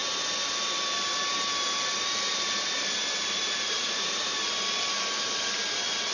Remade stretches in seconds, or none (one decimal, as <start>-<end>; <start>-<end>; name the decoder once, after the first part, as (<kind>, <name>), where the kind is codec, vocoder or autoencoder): 3.3-4.3 (vocoder, Vocos)